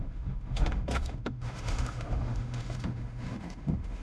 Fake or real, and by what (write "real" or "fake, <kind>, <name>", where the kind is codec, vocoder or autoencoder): fake, autoencoder, DAC-VAE